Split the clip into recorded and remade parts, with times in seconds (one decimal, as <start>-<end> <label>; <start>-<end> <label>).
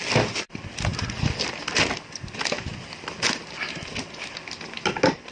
0.0-5.3 recorded